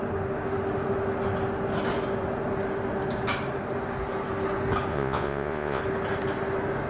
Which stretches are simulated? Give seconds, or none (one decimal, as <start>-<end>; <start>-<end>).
4.9-5.8